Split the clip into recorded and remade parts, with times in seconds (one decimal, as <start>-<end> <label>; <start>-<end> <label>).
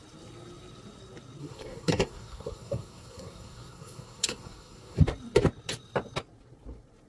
0.0-1.4 recorded; 1.4-5.0 remade; 5.0-7.1 recorded